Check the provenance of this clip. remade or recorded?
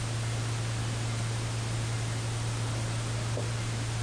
recorded